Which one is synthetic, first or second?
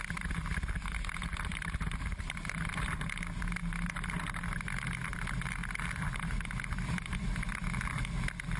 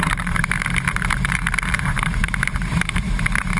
second